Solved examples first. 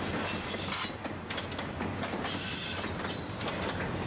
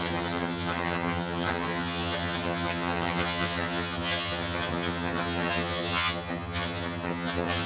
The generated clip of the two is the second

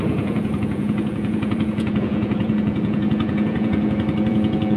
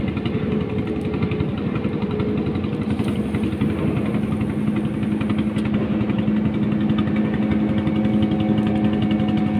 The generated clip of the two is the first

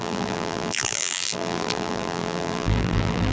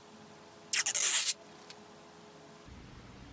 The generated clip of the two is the first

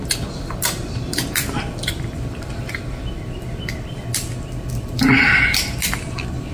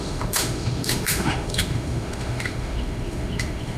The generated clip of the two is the second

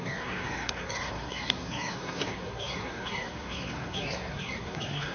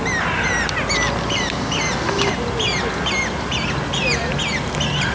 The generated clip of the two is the first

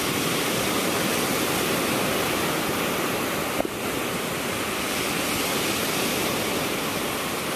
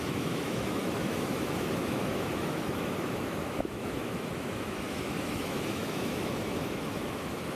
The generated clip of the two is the second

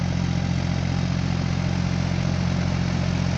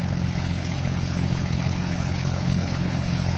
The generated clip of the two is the second